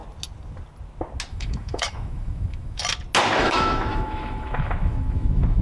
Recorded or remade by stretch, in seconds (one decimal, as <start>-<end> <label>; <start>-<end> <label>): 0.0-1.3 recorded; 1.3-2.8 remade; 2.8-3.4 recorded; 3.4-5.6 remade